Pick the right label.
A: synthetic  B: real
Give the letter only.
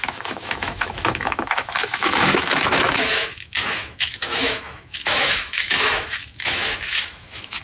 A